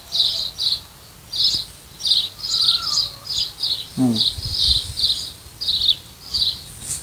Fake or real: real